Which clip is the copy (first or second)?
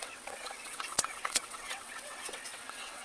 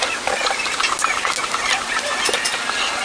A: first